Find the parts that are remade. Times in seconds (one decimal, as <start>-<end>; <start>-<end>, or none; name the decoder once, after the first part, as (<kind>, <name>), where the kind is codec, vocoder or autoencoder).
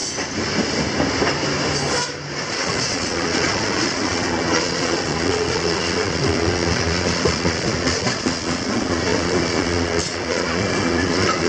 2.5-11.5 (vocoder, Vocos)